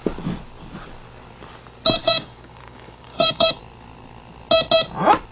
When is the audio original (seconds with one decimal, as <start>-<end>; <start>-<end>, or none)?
0.0-2.0; 3.6-5.3